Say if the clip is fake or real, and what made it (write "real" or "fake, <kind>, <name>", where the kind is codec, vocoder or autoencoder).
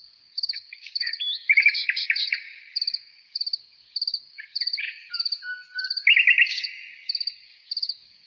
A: fake, codec, DAC